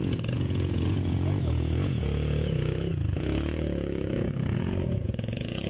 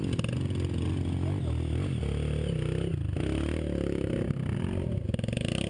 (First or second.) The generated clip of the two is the first